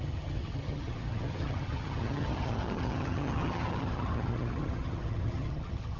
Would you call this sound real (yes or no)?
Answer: no